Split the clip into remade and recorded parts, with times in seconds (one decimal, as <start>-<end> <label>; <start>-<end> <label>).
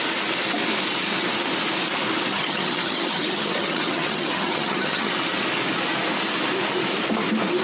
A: 0.0-2.3 recorded; 2.3-5.1 remade; 5.1-7.6 recorded